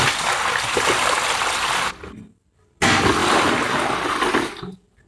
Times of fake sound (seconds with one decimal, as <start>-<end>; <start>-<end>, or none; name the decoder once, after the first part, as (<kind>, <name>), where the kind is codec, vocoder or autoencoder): none